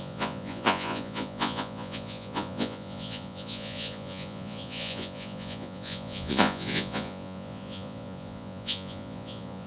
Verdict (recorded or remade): remade